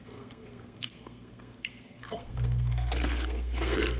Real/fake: fake